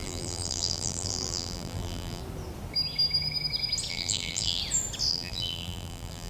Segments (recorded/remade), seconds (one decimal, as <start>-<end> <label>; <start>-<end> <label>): 0.0-2.2 remade; 2.2-3.9 recorded; 3.9-4.6 remade; 4.6-5.1 recorded; 5.1-6.3 remade